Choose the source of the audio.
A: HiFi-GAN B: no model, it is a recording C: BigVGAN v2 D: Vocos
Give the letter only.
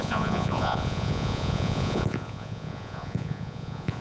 D